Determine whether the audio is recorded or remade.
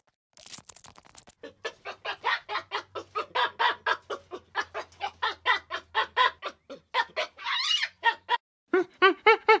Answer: recorded